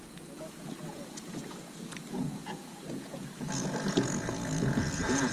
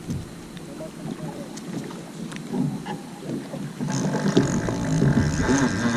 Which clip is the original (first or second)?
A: second